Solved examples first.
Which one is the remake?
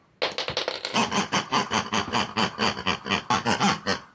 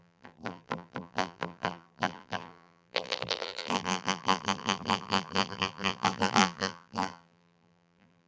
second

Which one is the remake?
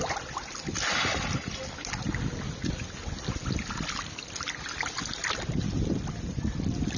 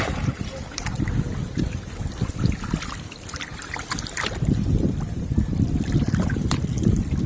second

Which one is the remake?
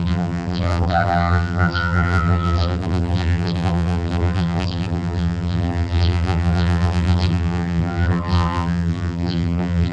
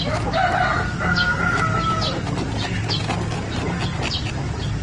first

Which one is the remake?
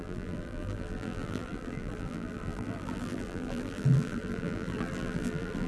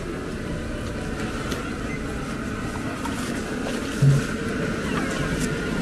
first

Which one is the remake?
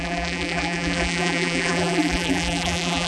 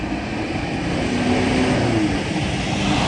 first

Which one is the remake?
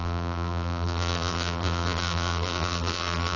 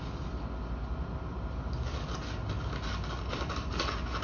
first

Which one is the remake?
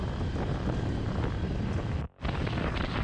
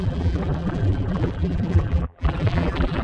second